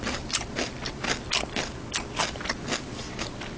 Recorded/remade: recorded